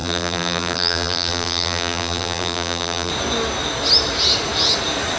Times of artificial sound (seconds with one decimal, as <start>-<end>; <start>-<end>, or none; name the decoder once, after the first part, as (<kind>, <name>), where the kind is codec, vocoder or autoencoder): 0.0-3.1 (vocoder, BigVGAN v2)